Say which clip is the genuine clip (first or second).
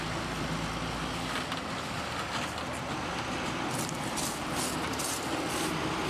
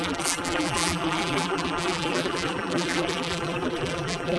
first